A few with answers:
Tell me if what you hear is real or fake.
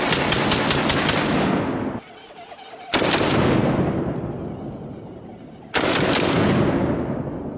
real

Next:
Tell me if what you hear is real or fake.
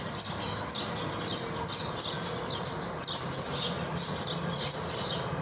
real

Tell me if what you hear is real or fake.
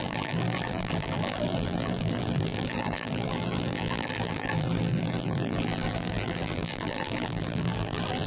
fake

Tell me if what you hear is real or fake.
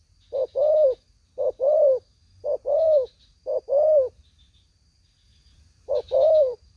fake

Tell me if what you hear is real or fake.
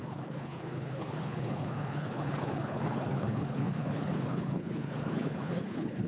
fake